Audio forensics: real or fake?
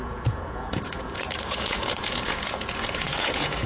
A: fake